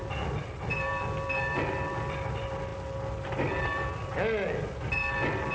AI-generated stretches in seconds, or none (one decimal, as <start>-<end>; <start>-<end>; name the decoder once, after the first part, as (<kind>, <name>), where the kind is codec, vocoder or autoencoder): none